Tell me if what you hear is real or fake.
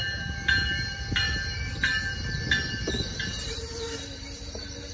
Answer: real